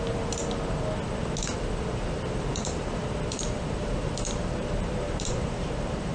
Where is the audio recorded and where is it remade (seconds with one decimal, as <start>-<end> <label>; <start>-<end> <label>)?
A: 0.0-0.4 remade; 0.4-1.8 recorded; 1.8-6.1 remade